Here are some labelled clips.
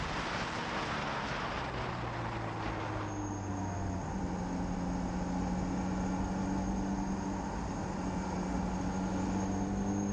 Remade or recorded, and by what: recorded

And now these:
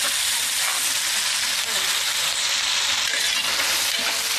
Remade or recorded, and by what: recorded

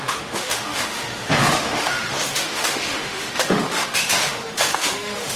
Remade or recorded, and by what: remade, autoencoder, DAC-VAE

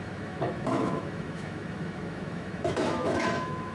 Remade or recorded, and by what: remade, autoencoder, DAC-VAE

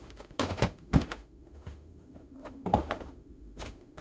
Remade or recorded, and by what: remade, autoencoder, DAC-VAE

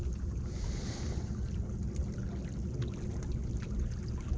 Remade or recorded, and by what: recorded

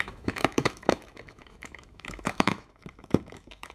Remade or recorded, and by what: remade, autoencoder, DAC-VAE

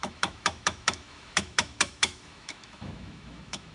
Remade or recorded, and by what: remade, autoencoder, DAC-VAE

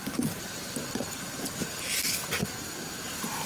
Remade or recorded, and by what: recorded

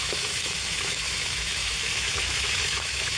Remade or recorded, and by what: remade, autoencoder, DAC-VAE